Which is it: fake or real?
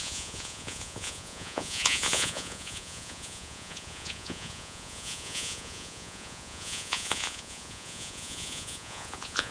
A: fake